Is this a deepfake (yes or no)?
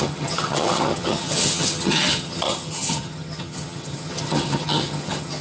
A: yes